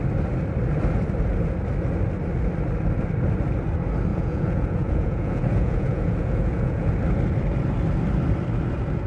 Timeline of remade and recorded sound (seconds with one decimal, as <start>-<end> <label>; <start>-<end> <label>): 0.0-4.1 recorded; 4.1-6.9 remade; 6.9-9.1 recorded